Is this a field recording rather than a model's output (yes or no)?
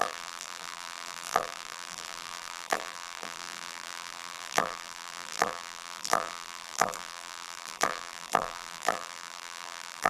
no